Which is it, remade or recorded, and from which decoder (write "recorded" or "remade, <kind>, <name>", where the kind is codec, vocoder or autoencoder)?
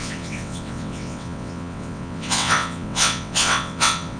remade, vocoder, WaveNeXt